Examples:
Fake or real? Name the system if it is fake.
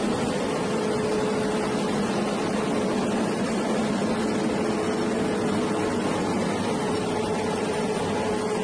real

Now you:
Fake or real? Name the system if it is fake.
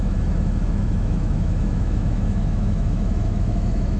fake, autoencoder, DAC-VAE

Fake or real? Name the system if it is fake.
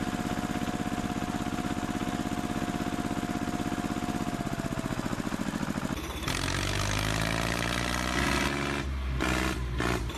real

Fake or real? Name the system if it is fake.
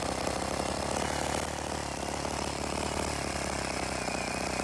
real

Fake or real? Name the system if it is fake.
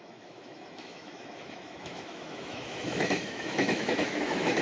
fake, autoencoder, DAC-VAE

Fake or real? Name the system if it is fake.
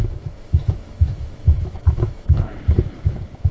fake, autoencoder, DAC-VAE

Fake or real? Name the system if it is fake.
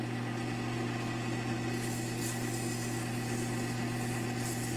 real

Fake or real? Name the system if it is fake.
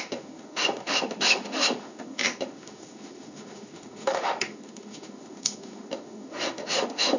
fake, autoencoder, DAC-VAE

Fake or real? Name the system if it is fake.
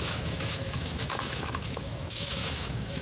fake, autoencoder, DAC-VAE